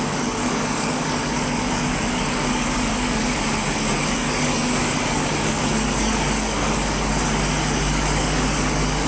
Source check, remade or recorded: remade